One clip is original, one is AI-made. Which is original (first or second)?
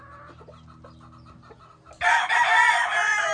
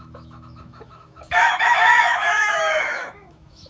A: first